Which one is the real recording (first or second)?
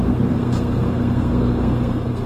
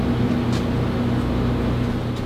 second